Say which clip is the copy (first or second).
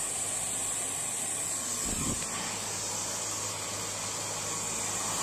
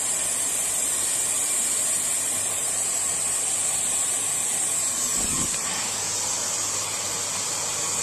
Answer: second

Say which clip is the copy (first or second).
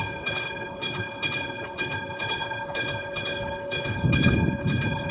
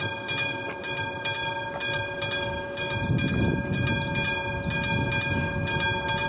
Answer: first